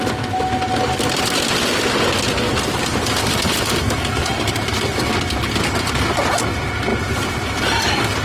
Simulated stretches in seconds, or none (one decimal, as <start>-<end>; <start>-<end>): 4.2-5.6; 6.9-7.6

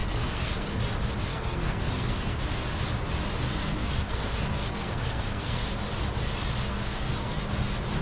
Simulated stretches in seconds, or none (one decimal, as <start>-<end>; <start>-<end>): 0.0-0.8; 1.3-2.4; 3.5-5.6; 6.7-7.4

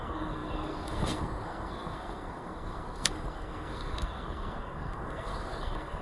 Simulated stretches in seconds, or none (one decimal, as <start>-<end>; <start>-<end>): 0.0-6.0

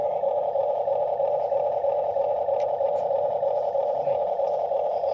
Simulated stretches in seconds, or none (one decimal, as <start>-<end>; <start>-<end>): none

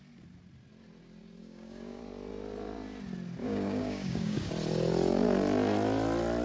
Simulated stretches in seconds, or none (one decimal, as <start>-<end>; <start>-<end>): 1.4-2.0; 3.4-4.5

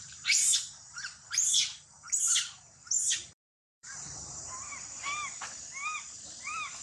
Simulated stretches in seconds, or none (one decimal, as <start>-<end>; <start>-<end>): 0.0-6.8

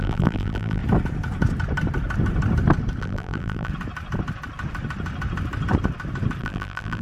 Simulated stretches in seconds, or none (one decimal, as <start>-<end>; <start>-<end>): 0.0-0.8; 3.0-3.7; 6.4-7.0